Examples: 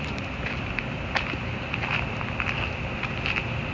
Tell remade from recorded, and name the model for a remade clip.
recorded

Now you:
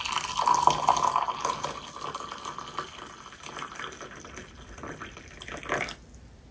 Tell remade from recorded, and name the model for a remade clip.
recorded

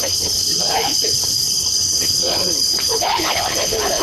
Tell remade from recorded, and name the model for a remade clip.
remade, codec, HILCodec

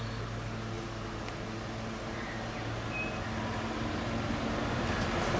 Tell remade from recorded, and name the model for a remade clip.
recorded